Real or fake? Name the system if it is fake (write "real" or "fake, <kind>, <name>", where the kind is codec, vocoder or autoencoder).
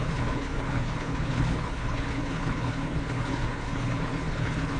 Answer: fake, codec, HILCodec